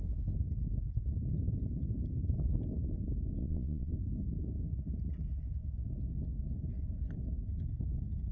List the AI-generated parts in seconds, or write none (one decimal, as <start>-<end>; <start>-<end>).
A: 3.4-3.9